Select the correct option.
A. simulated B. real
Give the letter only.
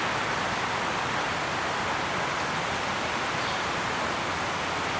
B